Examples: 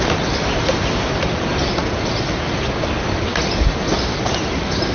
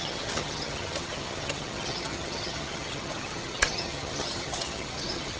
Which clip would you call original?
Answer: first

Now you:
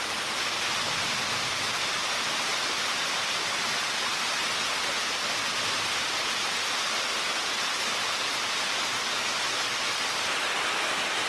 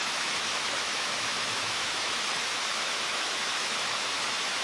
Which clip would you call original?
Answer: first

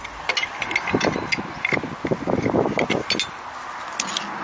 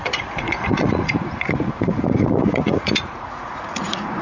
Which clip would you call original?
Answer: first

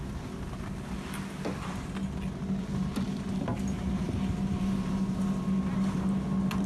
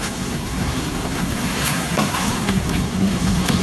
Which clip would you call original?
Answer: first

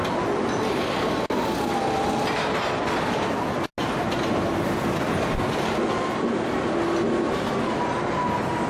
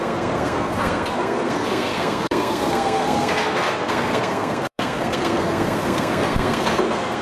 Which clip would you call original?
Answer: first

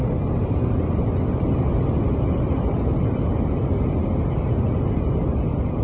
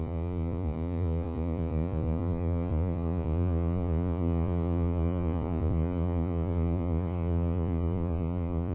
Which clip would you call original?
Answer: first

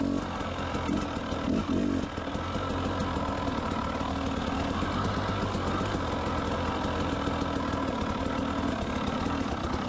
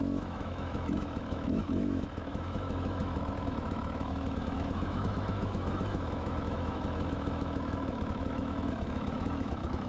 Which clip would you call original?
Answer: first